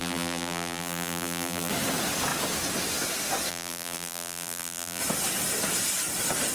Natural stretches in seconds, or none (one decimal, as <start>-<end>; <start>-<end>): 1.7-3.5; 5.0-6.5